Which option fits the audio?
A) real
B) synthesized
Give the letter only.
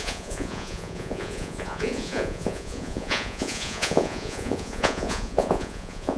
B